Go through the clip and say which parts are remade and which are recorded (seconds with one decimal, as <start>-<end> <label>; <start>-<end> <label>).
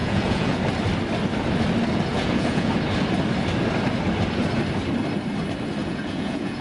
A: 0.0-0.6 remade; 0.6-2.1 recorded; 2.1-2.7 remade; 2.7-5.8 recorded; 5.8-6.6 remade